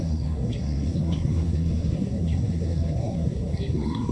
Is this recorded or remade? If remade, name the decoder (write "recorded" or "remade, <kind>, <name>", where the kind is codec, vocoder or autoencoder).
remade, codec, SNAC